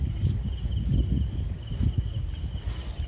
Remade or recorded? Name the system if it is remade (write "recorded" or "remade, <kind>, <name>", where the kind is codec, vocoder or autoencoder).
recorded